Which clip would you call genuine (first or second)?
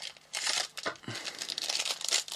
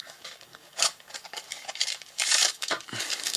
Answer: first